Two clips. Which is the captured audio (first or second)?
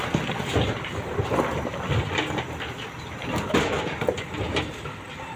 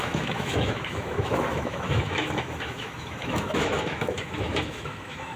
first